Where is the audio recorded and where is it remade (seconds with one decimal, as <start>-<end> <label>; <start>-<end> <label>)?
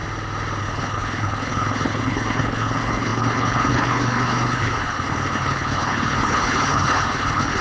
0.0-0.6 recorded; 0.6-7.6 remade